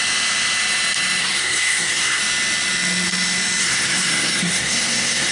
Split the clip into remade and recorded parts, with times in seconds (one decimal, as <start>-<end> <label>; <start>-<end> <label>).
0.0-1.2 recorded; 1.2-2.2 remade; 2.2-3.6 recorded; 3.6-5.3 remade